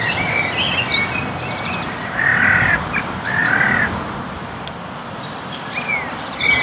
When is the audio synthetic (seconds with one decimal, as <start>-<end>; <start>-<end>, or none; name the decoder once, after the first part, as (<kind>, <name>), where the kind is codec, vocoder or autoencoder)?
none